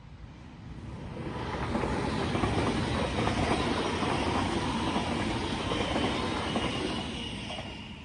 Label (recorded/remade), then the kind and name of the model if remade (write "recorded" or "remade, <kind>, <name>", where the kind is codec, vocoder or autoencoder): recorded